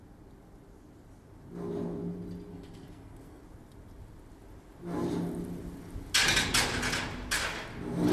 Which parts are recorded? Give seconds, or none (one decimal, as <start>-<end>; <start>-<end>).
0.0-2.5; 3.4-8.1